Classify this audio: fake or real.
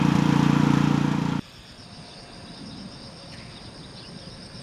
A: fake